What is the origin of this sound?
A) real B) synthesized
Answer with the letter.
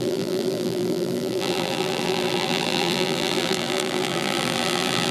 B